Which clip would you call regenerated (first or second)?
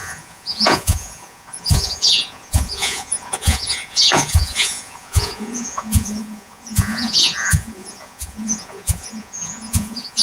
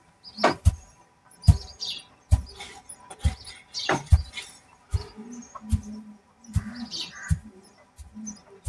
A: first